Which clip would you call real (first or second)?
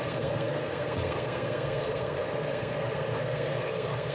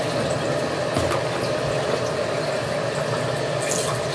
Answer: second